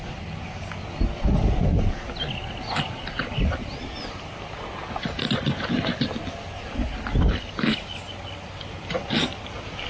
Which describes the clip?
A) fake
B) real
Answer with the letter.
B